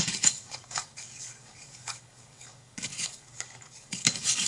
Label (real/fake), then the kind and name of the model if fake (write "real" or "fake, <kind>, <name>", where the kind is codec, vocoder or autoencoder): fake, codec, DAC